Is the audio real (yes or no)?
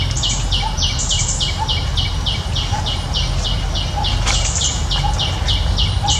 yes